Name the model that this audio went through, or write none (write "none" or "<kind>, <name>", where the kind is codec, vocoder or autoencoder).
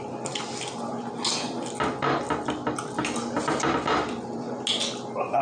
none